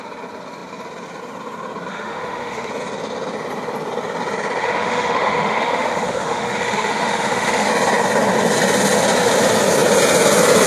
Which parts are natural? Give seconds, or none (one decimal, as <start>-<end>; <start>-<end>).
0.0-1.9; 2.7-4.6; 7.7-10.7